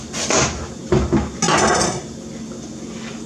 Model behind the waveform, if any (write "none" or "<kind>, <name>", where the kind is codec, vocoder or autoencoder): none